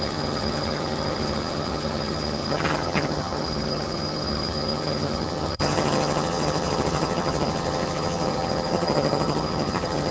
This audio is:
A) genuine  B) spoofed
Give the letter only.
B